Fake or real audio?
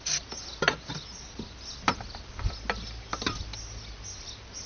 real